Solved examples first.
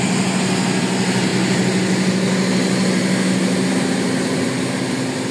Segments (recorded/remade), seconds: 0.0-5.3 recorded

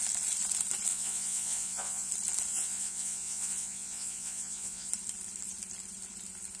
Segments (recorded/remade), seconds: 0.0-0.9 recorded; 0.9-2.1 remade; 2.1-2.5 recorded; 2.5-4.9 remade; 4.9-6.6 recorded

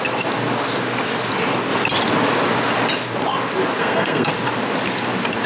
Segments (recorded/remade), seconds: 0.0-3.8 recorded; 3.8-4.3 remade; 4.3-5.5 recorded

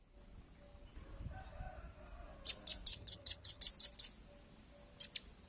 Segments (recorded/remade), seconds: 0.0-2.9 recorded; 2.9-3.6 remade; 3.6-5.5 recorded